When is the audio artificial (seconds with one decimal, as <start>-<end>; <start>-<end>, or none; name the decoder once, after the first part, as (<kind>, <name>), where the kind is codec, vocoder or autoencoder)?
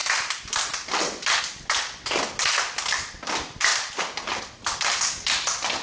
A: none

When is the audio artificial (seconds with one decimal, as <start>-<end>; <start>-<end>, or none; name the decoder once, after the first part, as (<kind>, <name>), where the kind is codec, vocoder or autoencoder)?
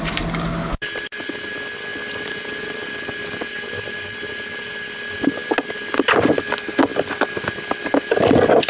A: none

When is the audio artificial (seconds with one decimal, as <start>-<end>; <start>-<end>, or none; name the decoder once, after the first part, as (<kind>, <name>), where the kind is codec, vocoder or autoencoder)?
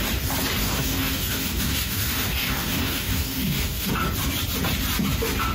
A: 0.6-3.9 (codec, DAC)